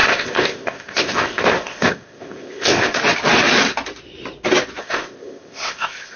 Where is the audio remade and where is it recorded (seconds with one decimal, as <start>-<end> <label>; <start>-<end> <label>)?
0.0-3.0 remade; 3.0-4.8 recorded; 4.8-6.2 remade